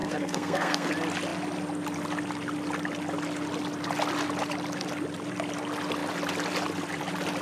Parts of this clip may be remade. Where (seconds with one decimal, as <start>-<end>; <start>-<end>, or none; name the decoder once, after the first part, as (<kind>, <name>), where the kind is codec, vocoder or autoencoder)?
0.0-0.9 (codec, SNAC)